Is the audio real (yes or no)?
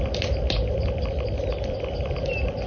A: yes